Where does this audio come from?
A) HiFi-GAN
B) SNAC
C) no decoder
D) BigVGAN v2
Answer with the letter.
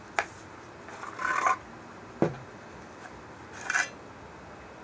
C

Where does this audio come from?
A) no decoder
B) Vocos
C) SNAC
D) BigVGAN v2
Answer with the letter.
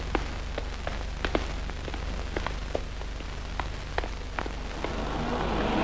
A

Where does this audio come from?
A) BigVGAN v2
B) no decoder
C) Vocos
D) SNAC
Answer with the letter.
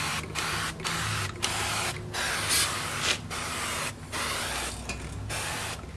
B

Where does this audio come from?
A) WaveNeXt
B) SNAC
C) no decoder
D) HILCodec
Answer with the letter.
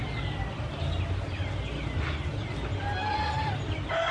C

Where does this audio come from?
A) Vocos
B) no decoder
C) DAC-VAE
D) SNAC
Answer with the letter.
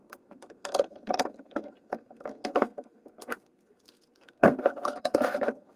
D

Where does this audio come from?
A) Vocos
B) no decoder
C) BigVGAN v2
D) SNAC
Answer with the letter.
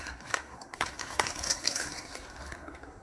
D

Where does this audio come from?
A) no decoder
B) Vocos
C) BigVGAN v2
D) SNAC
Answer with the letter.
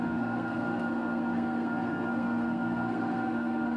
D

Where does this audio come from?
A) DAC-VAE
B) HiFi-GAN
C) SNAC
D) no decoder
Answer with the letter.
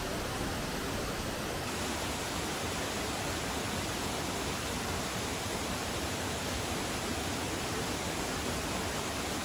D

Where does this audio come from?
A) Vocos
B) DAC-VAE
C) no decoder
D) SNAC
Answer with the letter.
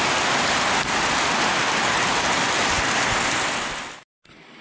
C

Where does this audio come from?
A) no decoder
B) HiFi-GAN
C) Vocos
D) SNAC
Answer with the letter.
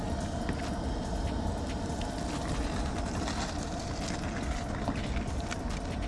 A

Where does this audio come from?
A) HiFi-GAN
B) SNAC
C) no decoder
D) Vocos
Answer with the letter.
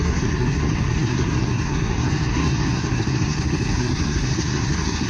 B